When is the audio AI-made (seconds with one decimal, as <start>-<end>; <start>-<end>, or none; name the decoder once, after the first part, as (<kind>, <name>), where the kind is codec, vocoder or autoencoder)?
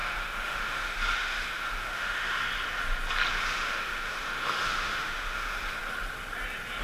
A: 0.0-2.4 (autoencoder, DAC-VAE); 3.3-5.8